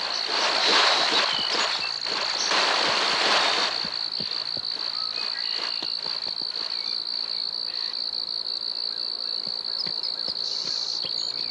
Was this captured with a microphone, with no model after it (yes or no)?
yes